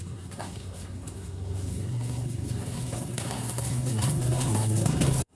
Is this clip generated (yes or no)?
yes